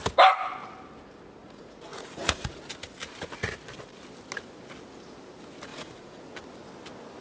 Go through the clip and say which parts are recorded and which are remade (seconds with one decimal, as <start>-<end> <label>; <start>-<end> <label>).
0.0-1.4 recorded; 1.4-2.6 remade; 2.6-5.7 recorded; 5.7-6.2 remade; 6.2-7.2 recorded